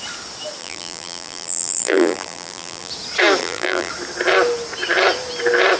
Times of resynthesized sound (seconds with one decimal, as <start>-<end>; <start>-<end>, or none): 0.6-2.9; 3.4-3.9